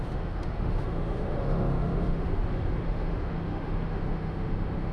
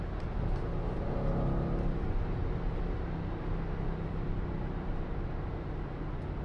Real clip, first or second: second